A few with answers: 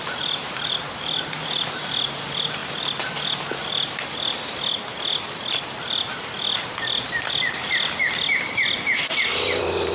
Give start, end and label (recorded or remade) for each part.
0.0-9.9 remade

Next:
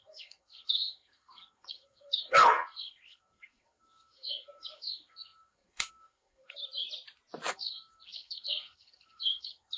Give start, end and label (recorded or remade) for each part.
0.0-6.6 remade; 6.6-7.5 recorded; 7.5-9.8 remade